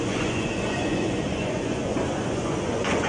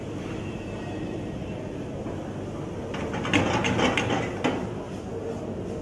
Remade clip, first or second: first